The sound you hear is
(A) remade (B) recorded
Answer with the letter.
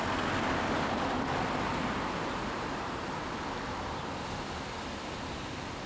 B